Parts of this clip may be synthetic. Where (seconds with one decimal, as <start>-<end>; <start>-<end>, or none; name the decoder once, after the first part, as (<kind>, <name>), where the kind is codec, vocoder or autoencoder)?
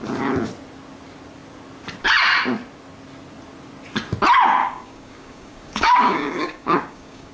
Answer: 4.6-7.3 (codec, DAC)